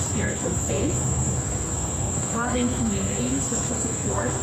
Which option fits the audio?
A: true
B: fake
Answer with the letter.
B